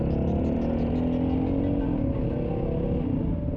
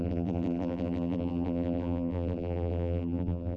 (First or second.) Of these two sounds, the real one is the first